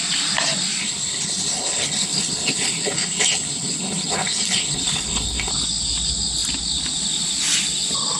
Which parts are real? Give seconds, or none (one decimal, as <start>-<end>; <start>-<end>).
0.0-0.8; 5.5-8.2